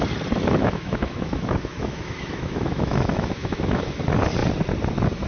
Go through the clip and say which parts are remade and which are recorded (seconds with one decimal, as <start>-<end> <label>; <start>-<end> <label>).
0.0-0.6 recorded; 0.6-3.8 remade; 3.8-5.3 recorded